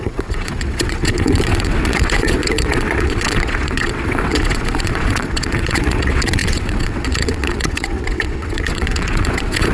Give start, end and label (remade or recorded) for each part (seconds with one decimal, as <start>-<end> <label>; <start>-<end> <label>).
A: 0.0-9.7 remade